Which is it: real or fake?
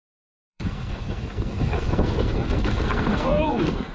fake